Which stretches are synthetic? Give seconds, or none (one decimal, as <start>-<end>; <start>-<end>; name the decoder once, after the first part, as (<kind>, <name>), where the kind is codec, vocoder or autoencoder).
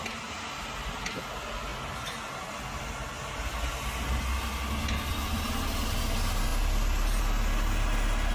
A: none